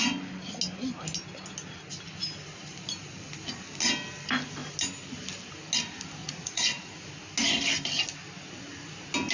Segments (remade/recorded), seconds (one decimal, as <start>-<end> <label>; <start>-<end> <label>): 0.0-6.2 recorded; 6.2-7.1 remade; 7.1-9.3 recorded